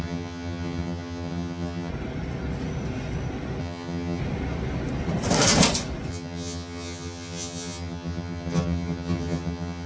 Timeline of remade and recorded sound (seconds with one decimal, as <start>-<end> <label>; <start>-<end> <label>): 0.0-1.9 remade; 1.9-3.6 recorded; 3.6-4.2 remade; 4.2-6.1 recorded; 6.1-9.9 remade

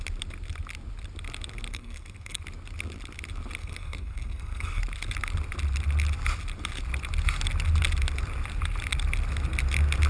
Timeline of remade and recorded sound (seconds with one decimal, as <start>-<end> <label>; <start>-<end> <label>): 0.0-1.7 recorded; 1.7-2.4 remade; 2.4-3.6 recorded; 3.6-4.8 remade; 4.8-10.1 recorded

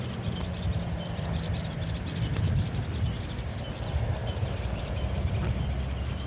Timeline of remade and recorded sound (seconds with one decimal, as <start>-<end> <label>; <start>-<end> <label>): 0.0-6.3 remade

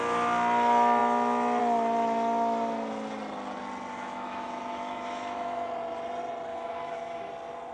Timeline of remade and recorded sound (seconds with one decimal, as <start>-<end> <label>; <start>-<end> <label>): 0.0-3.9 recorded; 3.9-5.7 remade; 5.7-6.5 recorded; 6.5-7.3 remade; 7.3-7.7 recorded

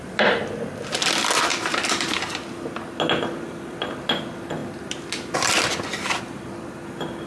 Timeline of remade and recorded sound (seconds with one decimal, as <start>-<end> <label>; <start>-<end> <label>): 0.0-1.5 recorded; 1.5-2.2 remade; 2.2-7.3 recorded